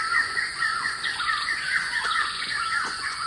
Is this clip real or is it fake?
fake